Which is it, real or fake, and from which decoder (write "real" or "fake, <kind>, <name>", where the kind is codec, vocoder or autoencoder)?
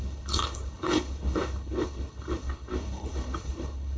fake, codec, HILCodec